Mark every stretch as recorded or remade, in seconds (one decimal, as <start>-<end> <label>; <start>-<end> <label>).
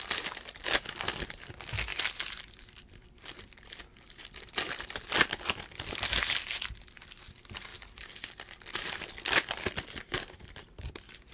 0.0-1.9 recorded; 1.9-6.6 remade; 6.6-7.7 recorded; 7.7-10.9 remade; 10.9-11.3 recorded